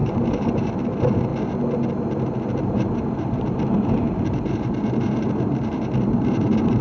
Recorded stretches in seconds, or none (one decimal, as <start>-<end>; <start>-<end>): 1.3-2.6